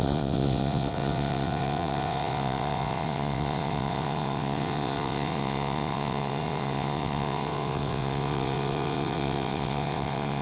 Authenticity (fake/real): fake